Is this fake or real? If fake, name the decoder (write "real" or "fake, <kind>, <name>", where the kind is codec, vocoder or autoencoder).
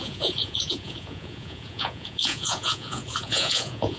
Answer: fake, vocoder, Vocos